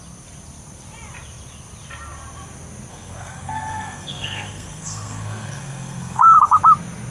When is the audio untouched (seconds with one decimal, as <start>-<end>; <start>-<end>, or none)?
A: 0.0-2.9; 6.6-7.1